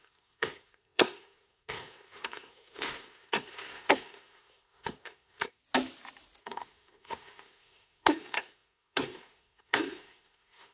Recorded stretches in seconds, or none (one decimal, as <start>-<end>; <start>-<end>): 5.6-6.4

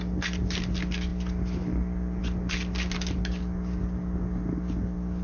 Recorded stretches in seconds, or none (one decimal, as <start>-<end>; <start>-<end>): 0.0-5.2

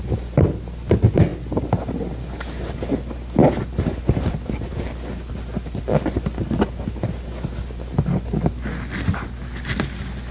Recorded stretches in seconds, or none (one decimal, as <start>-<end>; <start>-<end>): 0.0-10.3

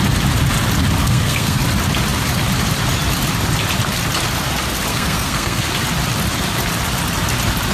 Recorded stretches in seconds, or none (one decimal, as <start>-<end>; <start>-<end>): 0.0-1.0; 1.6-4.9; 5.7-7.7

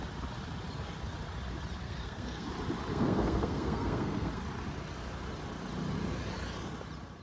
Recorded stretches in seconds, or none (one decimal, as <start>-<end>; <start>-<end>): 0.0-1.8; 2.5-2.9; 4.4-7.2

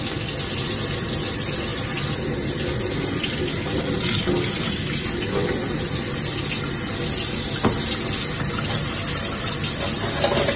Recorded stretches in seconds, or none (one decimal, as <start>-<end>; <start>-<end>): 0.0-10.6

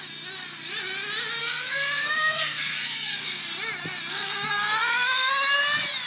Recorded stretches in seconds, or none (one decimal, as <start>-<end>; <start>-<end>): 0.0-1.4; 3.4-4.1; 5.3-6.1